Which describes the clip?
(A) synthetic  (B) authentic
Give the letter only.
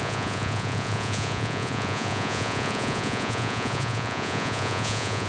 A